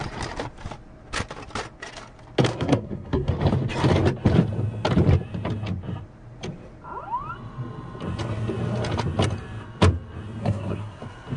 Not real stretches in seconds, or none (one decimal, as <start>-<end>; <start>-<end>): 2.5-3.3; 10.4-11.0